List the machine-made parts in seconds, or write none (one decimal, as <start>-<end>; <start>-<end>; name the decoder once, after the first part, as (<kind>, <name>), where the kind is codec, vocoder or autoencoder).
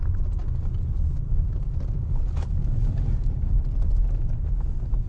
none